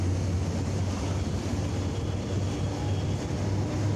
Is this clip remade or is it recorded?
recorded